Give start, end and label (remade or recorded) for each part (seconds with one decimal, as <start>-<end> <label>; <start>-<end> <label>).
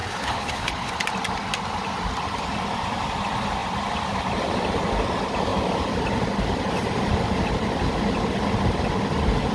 0.0-0.9 remade; 0.9-9.5 recorded